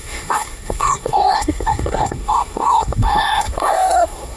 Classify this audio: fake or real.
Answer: fake